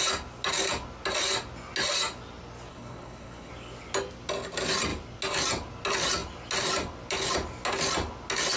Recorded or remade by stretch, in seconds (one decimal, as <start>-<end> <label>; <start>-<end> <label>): 0.0-2.7 recorded; 2.7-3.5 remade; 3.5-8.6 recorded